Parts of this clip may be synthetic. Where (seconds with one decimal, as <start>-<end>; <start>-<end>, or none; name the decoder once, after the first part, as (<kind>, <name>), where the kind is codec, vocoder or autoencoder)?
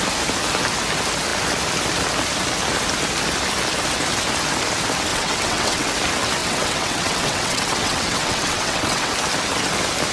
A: 5.1-5.9 (vocoder, WaveNeXt); 6.4-9.1